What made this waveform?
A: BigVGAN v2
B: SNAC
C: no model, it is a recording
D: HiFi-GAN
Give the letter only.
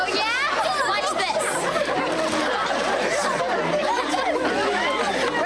C